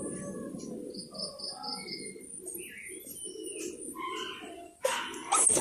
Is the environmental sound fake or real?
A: real